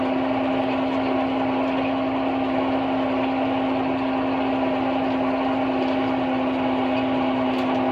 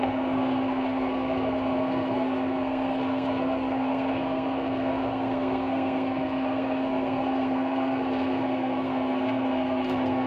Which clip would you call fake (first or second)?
second